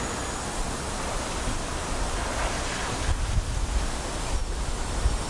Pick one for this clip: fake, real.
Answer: real